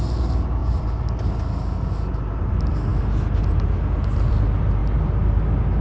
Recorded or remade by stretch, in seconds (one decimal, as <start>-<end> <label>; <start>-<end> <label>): 0.0-5.8 recorded